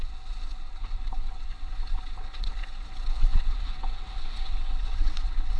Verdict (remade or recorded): remade